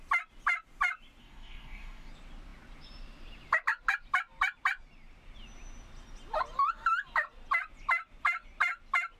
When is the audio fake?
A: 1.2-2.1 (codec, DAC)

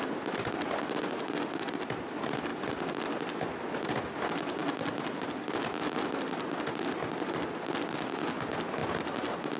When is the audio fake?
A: none

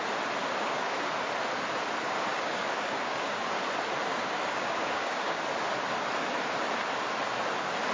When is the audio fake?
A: 0.4-1.0 (codec, DAC); 2.3-3.4; 4.1-5.4

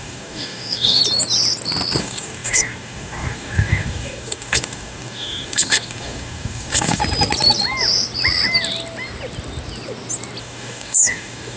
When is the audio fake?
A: 0.0-1.0 (codec, DAC); 2.0-7.0; 10.4-11.6